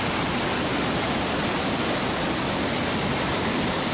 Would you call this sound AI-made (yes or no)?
no